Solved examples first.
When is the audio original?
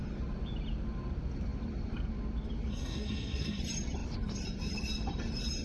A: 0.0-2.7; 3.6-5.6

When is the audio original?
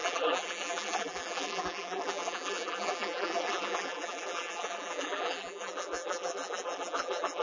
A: none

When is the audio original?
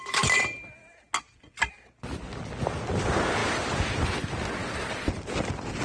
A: 0.0-5.8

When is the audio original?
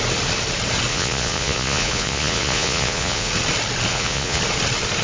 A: 0.0-0.9; 3.3-3.9; 4.4-5.0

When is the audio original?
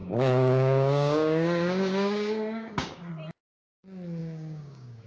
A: 3.1-4.2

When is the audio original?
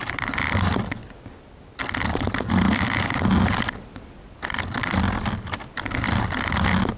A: 0.0-7.0